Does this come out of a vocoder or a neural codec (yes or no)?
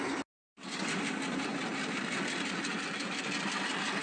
no